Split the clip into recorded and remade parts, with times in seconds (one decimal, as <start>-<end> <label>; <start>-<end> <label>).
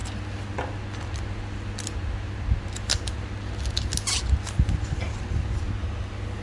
0.0-6.4 recorded